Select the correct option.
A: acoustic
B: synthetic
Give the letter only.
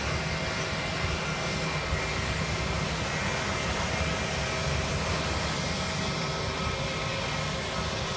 A